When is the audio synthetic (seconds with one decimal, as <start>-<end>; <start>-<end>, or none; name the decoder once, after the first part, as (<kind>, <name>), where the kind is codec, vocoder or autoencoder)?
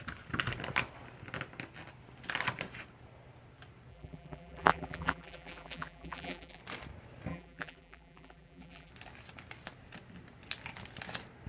3.9-6.6 (vocoder, BigVGAN v2); 7.3-8.9